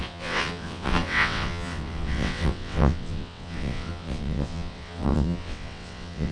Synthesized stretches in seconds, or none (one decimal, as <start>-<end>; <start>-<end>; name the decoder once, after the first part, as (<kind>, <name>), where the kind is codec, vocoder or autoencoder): 0.0-6.3 (vocoder, WaveNeXt)